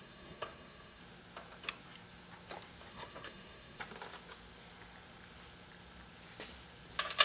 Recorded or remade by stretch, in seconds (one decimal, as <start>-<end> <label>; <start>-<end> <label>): 0.0-1.0 remade; 1.0-2.9 recorded; 2.9-3.8 remade; 3.8-7.2 recorded